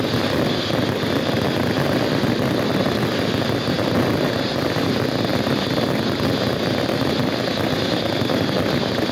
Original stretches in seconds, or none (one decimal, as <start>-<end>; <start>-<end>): 0.0-9.1